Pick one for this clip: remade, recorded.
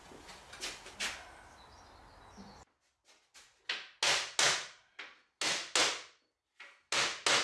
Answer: recorded